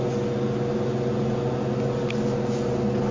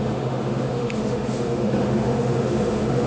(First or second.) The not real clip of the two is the second